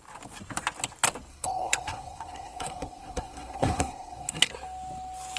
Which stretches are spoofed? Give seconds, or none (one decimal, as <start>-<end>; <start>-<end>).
1.3-4.5